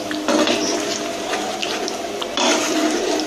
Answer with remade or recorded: recorded